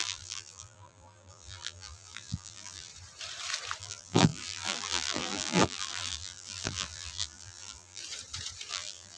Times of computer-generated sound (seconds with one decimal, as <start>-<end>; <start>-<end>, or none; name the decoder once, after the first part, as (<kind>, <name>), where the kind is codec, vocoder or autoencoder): 0.0-2.9 (vocoder, BigVGAN v2); 3.8-8.0; 8.7-9.2